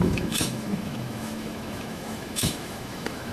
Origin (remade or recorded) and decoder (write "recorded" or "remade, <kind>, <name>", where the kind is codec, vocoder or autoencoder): remade, autoencoder, DAC-VAE